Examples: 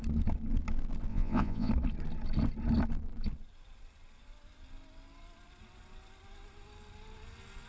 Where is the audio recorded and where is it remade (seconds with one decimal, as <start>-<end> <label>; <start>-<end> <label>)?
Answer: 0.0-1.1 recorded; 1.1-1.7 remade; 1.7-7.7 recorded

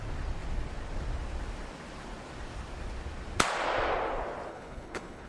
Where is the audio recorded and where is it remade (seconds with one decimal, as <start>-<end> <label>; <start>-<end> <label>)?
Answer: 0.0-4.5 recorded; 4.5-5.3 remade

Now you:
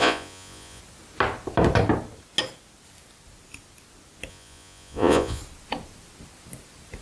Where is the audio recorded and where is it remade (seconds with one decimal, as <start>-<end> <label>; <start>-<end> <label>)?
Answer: 0.0-0.8 remade; 0.8-4.3 recorded; 4.3-5.4 remade; 5.4-7.0 recorded

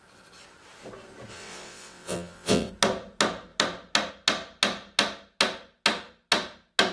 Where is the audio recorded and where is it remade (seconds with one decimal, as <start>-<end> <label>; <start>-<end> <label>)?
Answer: 0.0-1.3 recorded; 1.3-2.7 remade; 2.7-6.9 recorded